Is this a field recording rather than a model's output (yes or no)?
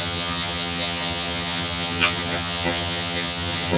no